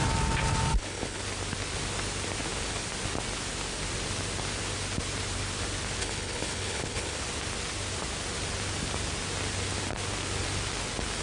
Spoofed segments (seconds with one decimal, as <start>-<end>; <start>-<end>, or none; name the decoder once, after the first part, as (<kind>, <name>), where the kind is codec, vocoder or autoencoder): 0.7-1.2 (codec, HILCodec); 6.0-7.2